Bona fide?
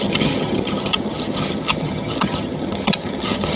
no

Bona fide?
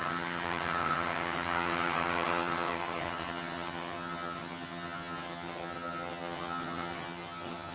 no